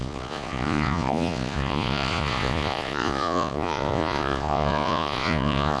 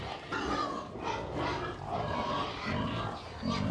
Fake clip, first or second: first